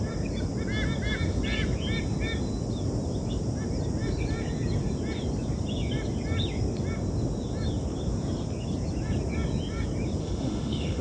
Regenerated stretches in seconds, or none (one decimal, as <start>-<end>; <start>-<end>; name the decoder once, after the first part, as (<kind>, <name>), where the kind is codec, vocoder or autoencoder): 10.2-11.0 (autoencoder, DAC-VAE)